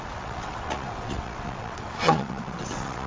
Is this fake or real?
fake